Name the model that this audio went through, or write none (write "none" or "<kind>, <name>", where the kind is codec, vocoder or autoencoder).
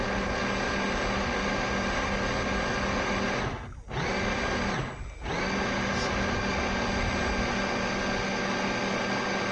none